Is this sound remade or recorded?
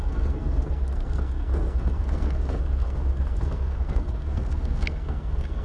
remade